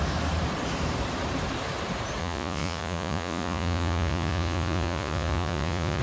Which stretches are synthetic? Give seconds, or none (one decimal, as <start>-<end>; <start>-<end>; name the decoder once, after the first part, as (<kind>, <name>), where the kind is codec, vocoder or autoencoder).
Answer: 2.2-6.0 (vocoder, Vocos)